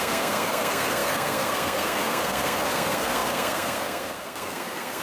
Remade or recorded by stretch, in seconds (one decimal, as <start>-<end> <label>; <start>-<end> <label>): 0.0-5.0 remade